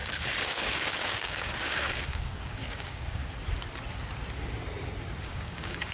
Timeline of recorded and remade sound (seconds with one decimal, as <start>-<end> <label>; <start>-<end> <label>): 0.0-3.2 remade; 3.2-5.2 recorded; 5.2-5.9 remade